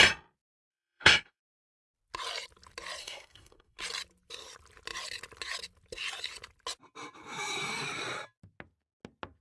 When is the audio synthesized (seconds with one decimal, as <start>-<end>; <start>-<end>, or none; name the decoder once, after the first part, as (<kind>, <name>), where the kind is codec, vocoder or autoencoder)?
0.7-1.4 (codec, SNAC); 3.0-3.8